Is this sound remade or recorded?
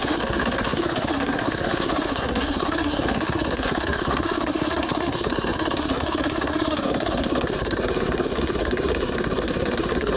remade